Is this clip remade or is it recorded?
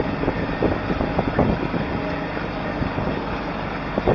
recorded